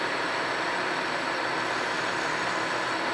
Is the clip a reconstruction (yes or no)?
no